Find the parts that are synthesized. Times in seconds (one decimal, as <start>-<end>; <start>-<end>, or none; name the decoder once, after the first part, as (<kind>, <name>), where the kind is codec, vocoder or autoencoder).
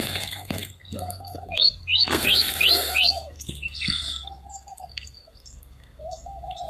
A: 0.0-6.7 (codec, SNAC)